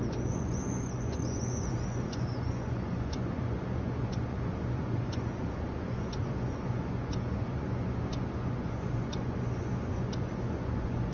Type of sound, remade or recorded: remade